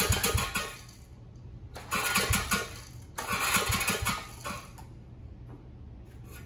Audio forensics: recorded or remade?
recorded